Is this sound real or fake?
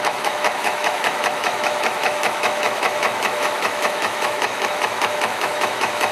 fake